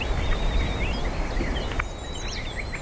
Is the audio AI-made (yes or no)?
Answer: no